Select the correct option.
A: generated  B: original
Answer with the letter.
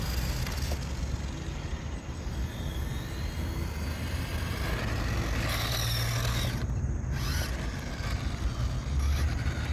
B